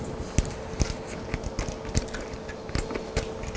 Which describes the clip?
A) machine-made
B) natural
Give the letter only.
B